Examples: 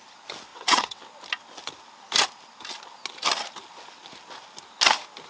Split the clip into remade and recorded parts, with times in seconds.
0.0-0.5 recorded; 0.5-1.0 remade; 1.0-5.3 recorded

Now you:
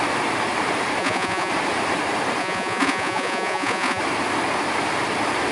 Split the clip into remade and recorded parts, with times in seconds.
0.0-1.0 recorded; 1.0-1.5 remade; 1.5-2.4 recorded; 2.4-4.0 remade; 4.0-5.5 recorded

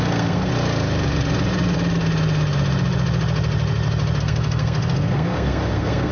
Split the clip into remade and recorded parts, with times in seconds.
0.0-0.5 remade; 0.5-4.2 recorded; 4.2-6.1 remade

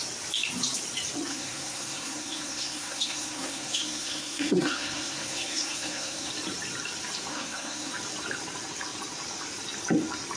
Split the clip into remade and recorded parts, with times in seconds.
0.0-1.3 recorded; 1.3-6.3 remade; 6.3-7.3 recorded; 7.3-7.9 remade; 7.9-10.4 recorded

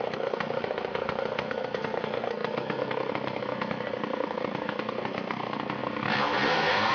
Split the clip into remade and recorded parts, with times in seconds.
0.0-6.9 remade

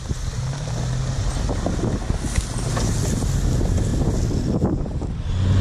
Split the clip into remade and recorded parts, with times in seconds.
0.0-5.6 recorded

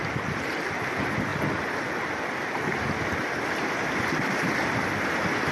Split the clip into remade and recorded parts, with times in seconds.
0.0-5.5 recorded

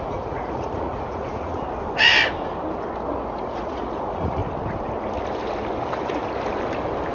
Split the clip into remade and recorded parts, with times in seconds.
0.0-1.6 remade; 1.6-3.1 recorded; 3.1-4.4 remade; 4.4-7.1 recorded